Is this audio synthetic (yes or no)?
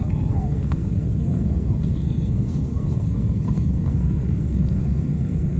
yes